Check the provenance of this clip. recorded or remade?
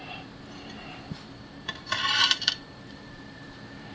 remade